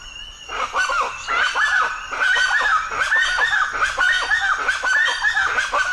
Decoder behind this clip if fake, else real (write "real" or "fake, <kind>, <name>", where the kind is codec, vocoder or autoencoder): real